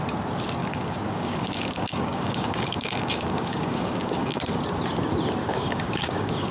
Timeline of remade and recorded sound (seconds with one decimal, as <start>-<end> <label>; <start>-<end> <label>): 0.0-0.6 recorded; 0.6-4.4 remade; 4.4-5.4 recorded; 5.4-6.5 remade